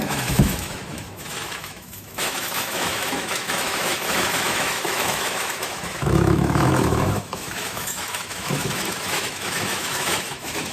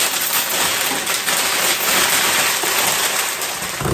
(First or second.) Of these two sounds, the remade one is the first